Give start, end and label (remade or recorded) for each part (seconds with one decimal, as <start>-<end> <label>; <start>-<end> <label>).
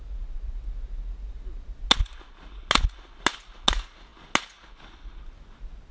0.0-5.9 recorded